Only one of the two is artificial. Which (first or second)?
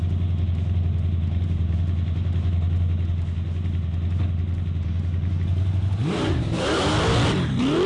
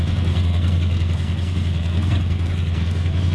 second